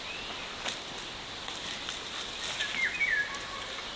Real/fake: real